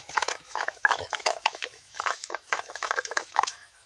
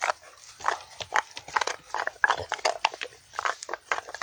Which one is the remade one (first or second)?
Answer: first